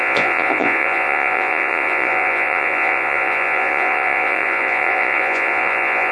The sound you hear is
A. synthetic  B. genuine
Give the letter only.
A